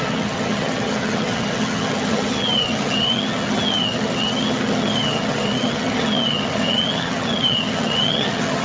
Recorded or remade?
remade